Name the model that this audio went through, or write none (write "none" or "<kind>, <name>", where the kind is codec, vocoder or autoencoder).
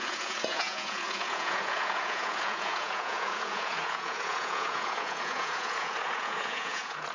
vocoder, Vocos